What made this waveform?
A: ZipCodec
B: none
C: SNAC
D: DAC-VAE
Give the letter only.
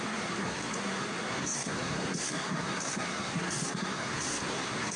C